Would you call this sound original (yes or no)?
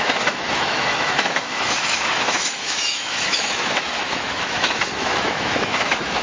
no